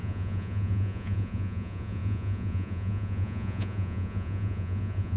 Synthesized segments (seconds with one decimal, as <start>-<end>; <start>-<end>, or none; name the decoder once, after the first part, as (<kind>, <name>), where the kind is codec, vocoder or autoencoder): 0.0-5.2 (vocoder, Vocos)